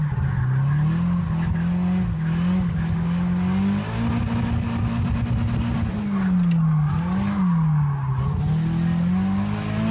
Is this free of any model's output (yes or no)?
yes